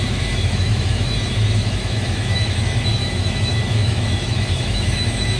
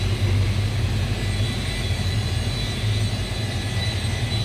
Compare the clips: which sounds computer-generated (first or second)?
first